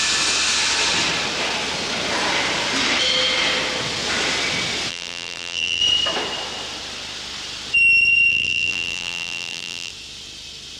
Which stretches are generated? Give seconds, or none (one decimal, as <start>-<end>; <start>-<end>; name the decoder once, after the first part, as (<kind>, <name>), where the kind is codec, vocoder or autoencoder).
4.9-5.8 (vocoder, BigVGAN v2); 8.3-9.9